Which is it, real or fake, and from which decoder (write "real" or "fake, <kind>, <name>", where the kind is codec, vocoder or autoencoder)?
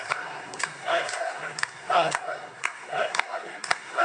fake, codec, SNAC